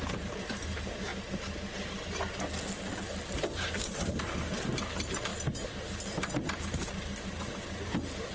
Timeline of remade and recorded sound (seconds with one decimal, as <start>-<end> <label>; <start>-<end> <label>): 0.0-1.1 remade; 1.1-3.3 recorded; 3.3-5.3 remade; 5.3-6.4 recorded; 6.4-8.3 remade